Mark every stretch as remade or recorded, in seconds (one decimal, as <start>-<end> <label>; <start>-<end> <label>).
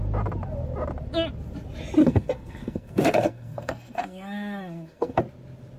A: 0.0-2.0 recorded; 2.0-5.2 remade; 5.2-5.8 recorded